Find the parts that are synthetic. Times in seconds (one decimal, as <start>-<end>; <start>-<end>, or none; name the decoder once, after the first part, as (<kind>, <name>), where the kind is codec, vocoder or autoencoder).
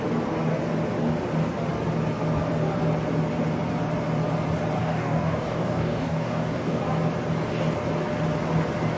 4.8-6.8 (codec, DAC)